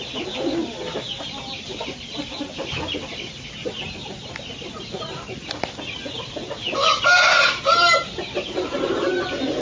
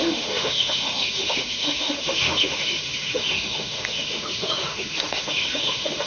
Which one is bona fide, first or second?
first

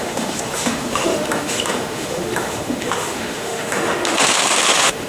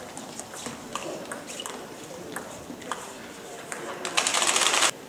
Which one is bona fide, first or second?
second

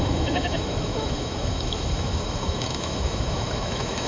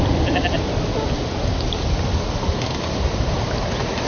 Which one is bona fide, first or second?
second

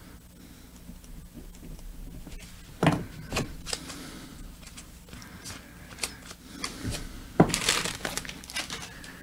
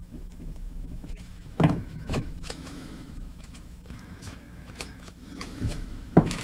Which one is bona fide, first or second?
first